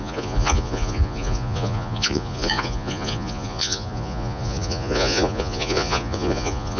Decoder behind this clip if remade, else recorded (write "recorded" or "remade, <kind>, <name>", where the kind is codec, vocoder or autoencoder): remade, vocoder, Vocos